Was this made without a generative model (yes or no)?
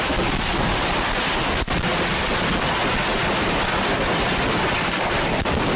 yes